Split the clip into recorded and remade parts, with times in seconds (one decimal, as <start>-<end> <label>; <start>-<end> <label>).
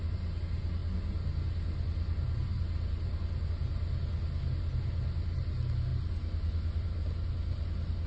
0.0-8.1 recorded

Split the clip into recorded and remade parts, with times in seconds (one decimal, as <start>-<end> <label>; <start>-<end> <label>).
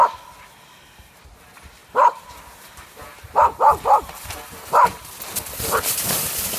0.0-1.8 recorded; 1.8-3.4 remade; 3.4-6.6 recorded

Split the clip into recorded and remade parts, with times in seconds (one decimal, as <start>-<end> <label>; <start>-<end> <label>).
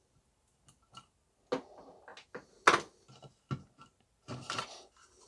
0.0-5.3 recorded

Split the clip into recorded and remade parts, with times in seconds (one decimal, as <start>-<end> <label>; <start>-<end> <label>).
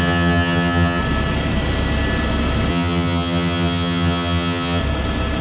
0.0-1.0 remade; 1.0-2.7 recorded; 2.7-4.8 remade; 4.8-5.4 recorded